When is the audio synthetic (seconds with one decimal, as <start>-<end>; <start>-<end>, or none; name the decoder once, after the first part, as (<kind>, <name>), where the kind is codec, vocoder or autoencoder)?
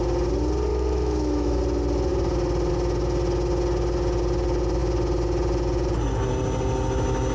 0.7-1.6 (autoencoder, DAC-VAE)